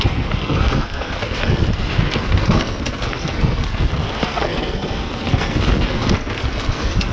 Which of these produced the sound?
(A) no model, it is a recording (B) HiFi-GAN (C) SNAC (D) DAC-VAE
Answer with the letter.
C